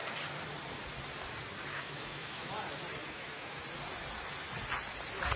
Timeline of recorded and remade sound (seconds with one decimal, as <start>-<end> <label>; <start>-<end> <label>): 0.0-1.7 recorded; 1.7-2.5 remade; 2.5-3.0 recorded; 3.0-3.6 remade; 3.6-5.4 recorded